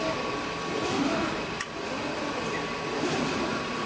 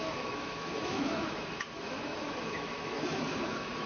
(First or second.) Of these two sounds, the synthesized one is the second